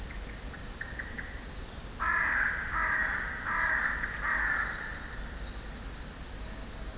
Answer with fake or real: real